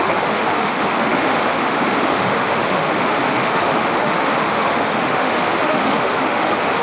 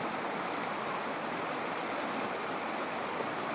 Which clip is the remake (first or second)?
first